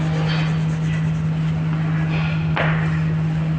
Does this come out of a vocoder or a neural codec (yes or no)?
no